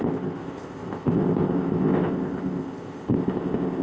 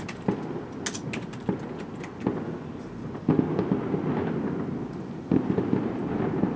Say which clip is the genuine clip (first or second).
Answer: second